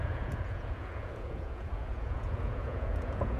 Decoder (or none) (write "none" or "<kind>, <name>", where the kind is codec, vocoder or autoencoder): vocoder, Vocos